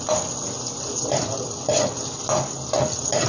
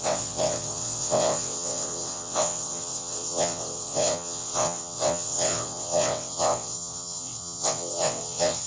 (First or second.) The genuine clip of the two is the first